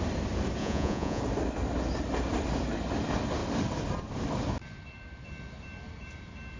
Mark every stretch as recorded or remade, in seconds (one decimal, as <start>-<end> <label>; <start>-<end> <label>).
0.0-0.6 recorded; 0.6-1.2 remade; 1.2-6.6 recorded